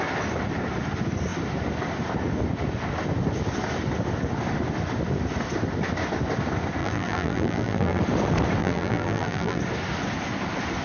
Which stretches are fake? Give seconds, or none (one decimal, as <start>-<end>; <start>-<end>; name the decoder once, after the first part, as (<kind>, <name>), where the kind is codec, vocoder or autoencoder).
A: 6.8-8.0 (vocoder, BigVGAN v2); 8.6-9.6